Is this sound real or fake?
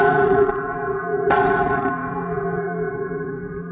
fake